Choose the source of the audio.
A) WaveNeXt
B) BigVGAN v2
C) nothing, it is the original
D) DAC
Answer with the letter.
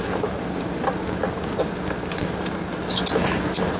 C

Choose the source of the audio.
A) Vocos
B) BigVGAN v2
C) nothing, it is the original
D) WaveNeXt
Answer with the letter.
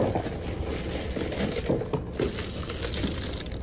C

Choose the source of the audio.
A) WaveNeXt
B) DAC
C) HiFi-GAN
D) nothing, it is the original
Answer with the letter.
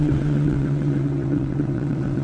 A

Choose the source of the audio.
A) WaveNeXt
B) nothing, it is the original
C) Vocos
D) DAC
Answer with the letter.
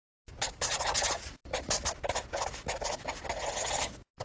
B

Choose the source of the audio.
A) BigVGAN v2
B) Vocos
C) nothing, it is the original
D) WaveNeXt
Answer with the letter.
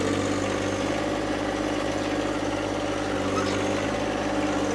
C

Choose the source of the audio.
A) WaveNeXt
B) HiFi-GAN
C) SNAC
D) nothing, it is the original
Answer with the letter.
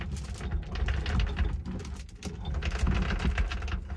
D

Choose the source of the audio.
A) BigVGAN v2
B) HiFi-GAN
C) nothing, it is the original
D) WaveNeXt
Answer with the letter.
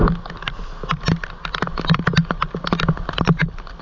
C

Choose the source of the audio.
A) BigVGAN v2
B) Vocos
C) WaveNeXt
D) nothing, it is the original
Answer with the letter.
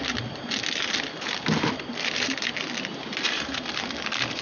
D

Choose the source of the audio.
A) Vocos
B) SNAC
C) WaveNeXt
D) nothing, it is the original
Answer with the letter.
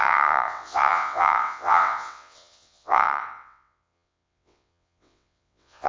C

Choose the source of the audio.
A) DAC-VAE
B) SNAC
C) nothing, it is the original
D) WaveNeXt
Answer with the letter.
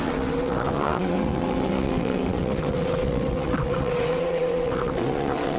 D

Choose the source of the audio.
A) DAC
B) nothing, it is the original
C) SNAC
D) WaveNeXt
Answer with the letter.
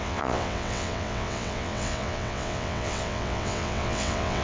D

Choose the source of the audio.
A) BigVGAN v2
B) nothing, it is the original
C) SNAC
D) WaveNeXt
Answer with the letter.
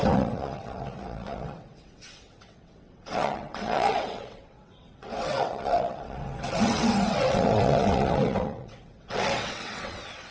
D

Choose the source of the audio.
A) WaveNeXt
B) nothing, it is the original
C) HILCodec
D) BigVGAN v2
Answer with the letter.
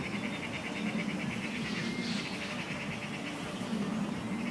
B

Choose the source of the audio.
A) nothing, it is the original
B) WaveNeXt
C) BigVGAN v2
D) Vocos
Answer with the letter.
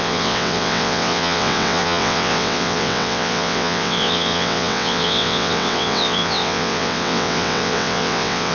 B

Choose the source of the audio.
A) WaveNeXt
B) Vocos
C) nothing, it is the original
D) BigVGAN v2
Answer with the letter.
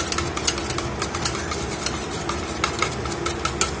C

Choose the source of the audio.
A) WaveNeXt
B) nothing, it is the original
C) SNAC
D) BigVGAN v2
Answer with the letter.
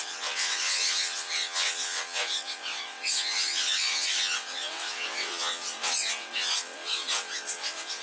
A